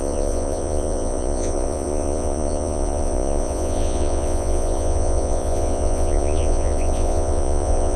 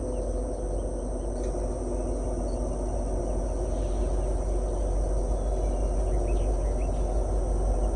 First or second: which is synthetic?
first